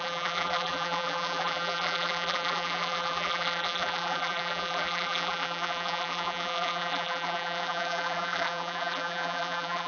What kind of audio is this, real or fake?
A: fake